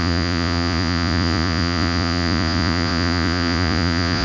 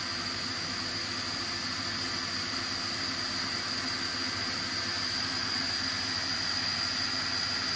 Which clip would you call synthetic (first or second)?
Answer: first